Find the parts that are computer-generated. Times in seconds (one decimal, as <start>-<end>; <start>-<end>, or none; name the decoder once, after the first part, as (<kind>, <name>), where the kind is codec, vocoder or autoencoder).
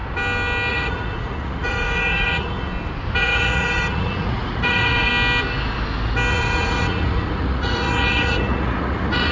0.7-2.7 (vocoder, Vocos); 3.2-5.1; 6.3-9.3